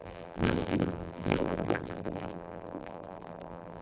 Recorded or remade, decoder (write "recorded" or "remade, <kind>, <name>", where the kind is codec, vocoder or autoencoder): remade, vocoder, BigVGAN v2